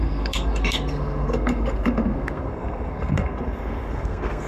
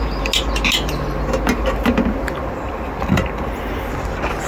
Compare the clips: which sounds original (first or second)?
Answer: second